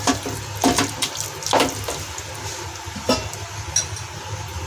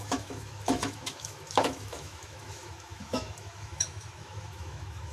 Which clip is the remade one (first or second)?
second